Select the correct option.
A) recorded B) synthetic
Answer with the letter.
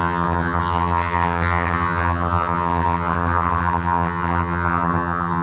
B